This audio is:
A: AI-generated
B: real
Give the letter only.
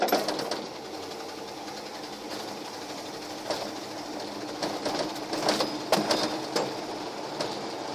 B